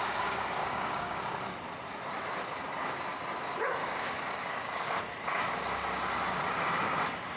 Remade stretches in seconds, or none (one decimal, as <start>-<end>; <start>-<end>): 0.6-1.2; 3.8-5.0